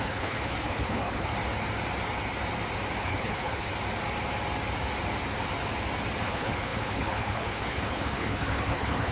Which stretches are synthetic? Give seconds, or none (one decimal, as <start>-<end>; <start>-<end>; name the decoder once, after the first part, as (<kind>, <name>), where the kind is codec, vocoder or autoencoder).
0.0-1.3 (codec, HILCodec); 3.0-3.7; 6.2-9.1